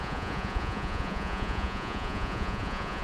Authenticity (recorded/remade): remade